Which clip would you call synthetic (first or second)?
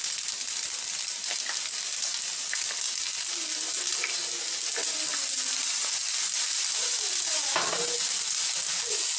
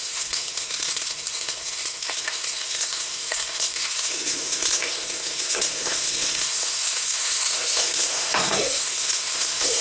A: second